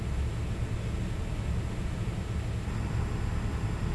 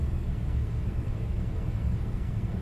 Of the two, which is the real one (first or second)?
first